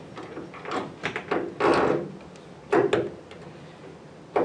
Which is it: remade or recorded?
recorded